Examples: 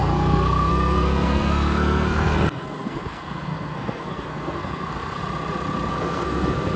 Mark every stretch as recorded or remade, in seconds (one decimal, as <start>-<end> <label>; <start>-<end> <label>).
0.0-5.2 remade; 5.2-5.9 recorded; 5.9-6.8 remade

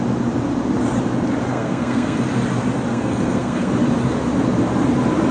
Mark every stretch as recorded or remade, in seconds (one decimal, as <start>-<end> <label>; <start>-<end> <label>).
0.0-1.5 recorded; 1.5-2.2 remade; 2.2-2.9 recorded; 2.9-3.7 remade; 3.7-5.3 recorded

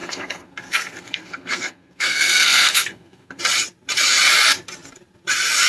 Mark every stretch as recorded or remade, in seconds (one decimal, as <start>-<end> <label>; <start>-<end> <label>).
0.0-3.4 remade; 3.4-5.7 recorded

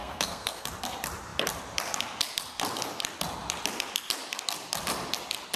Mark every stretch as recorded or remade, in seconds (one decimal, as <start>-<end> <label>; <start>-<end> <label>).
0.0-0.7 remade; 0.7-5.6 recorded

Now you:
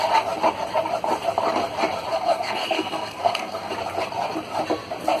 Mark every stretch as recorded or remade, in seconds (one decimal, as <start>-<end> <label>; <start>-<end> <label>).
0.0-2.1 recorded; 2.1-3.7 remade; 3.7-5.2 recorded